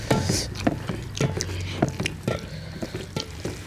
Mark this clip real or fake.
real